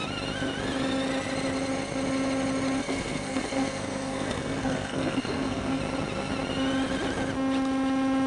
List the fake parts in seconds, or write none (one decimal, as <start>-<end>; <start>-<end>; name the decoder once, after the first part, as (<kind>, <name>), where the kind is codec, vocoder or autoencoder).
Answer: 2.8-5.8 (codec, SNAC)